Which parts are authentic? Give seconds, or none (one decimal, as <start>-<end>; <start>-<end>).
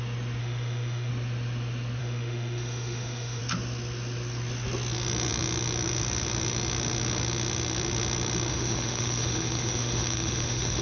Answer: 0.0-0.4; 1.1-2.0; 3.4-8.5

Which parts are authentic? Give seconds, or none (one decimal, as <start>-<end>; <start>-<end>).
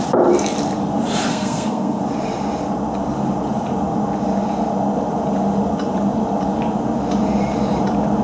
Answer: 0.0-1.3; 2.0-8.2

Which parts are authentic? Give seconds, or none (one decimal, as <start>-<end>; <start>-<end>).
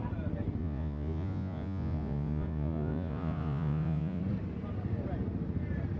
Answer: 0.0-0.6; 4.2-6.0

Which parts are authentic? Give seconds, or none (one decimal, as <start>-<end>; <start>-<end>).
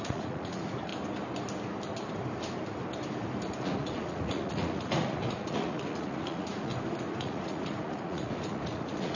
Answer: 0.9-3.6; 6.7-7.2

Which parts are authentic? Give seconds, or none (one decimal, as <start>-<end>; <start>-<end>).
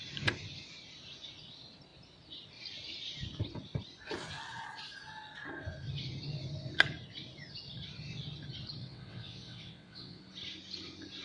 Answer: 0.0-8.8; 10.2-11.2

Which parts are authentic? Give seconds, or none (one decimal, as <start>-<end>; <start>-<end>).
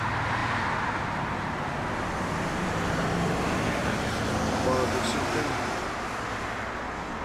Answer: 0.0-0.4; 4.2-7.2